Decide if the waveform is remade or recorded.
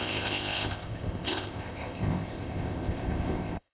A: remade